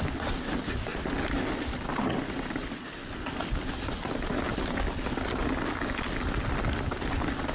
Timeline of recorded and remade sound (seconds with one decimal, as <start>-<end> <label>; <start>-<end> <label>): 0.0-7.5 recorded